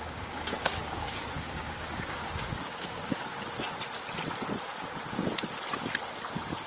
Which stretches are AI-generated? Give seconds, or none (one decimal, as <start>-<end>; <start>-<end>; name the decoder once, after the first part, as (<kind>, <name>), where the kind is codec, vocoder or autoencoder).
0.0-3.3 (codec, DAC)